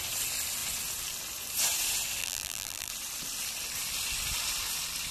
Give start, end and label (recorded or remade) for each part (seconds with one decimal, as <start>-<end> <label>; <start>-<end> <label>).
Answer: 0.0-2.2 recorded; 2.2-2.9 remade; 2.9-5.1 recorded